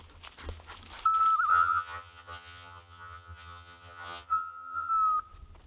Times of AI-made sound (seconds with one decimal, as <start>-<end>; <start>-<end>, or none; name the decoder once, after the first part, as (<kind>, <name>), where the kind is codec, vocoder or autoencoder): 1.5-4.9 (vocoder, HiFi-GAN)